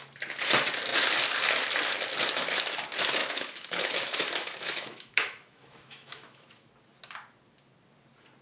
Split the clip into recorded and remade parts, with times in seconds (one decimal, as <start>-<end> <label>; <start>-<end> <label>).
0.0-3.2 recorded; 3.2-6.7 remade; 6.7-8.4 recorded